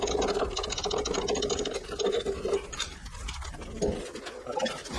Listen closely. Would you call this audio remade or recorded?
recorded